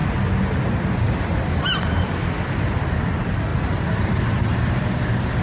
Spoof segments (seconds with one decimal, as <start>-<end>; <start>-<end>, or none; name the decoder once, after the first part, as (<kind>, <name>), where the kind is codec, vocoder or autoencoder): 3.5-5.4 (vocoder, BigVGAN v2)